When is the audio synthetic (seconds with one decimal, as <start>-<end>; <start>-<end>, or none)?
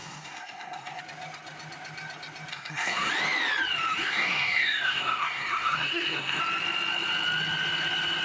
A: 0.0-1.0; 2.5-3.1; 4.0-6.4